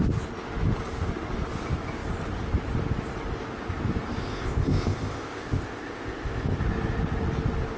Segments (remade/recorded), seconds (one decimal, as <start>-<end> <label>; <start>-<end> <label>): 0.0-4.2 recorded; 4.2-6.6 remade; 6.6-7.8 recorded